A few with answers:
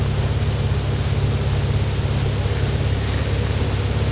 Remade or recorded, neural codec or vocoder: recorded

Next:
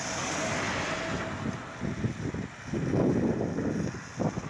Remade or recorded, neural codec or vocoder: recorded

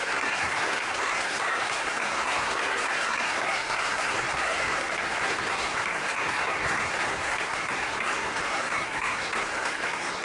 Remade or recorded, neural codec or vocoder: remade, codec, SNAC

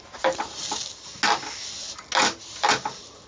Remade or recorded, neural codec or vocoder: recorded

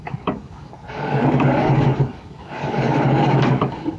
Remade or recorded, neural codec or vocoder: remade, codec, DAC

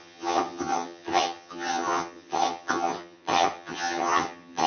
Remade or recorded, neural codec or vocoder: remade, vocoder, HiFi-GAN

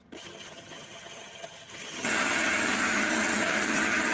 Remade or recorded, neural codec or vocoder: remade, vocoder, HiFi-GAN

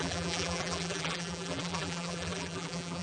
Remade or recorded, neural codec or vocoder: remade, vocoder, BigVGAN v2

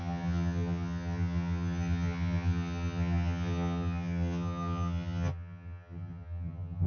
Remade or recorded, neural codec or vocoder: remade, vocoder, HiFi-GAN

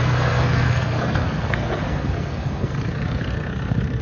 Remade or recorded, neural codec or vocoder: remade, codec, SNAC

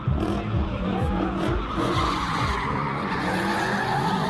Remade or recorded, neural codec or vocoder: remade, vocoder, Vocos